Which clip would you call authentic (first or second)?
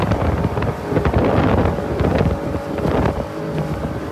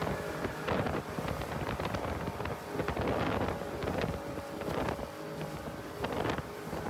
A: second